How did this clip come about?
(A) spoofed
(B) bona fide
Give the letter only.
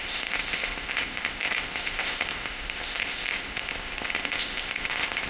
A